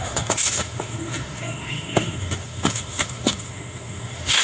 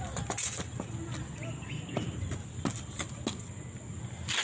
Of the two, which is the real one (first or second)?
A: second